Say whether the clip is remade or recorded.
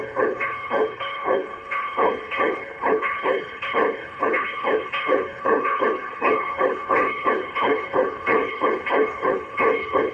remade